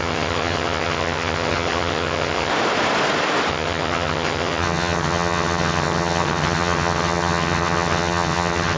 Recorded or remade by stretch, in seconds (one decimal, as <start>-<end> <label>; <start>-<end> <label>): 0.0-2.5 remade; 2.5-3.5 recorded; 3.5-8.8 remade